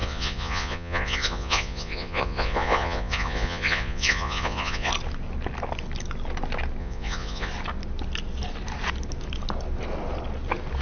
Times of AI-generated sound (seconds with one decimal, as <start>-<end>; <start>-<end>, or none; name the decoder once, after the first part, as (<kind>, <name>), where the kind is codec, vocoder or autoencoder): 0.0-4.9 (vocoder, Vocos); 6.8-7.5

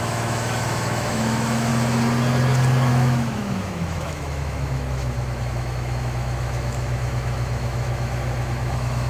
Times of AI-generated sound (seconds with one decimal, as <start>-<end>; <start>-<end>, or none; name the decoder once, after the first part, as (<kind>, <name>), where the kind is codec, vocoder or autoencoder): 0.0-1.7 (autoencoder, DAC-VAE); 2.9-9.1

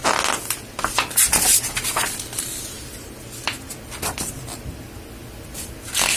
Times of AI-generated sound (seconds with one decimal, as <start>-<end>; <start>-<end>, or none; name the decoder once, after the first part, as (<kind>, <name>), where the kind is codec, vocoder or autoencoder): none